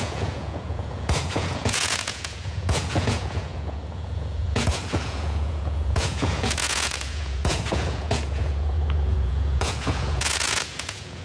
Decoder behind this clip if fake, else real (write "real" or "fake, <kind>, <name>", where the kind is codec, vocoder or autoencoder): fake, vocoder, Vocos